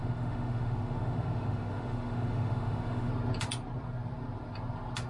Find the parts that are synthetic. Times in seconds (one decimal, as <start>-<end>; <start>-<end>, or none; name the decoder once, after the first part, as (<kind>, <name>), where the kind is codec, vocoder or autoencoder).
0.0-3.1 (autoencoder, DAC-VAE)